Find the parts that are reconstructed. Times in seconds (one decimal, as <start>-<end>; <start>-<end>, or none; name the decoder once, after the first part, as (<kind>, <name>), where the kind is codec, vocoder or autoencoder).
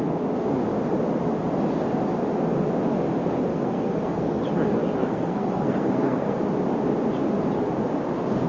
3.5-4.4 (codec, SNAC); 5.0-6.4